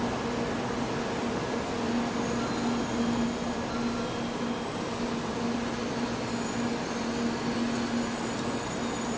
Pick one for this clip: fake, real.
real